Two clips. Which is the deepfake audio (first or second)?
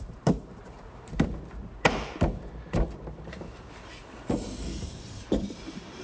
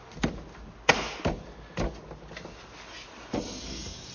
first